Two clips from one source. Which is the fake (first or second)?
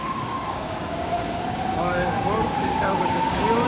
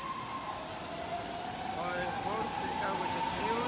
first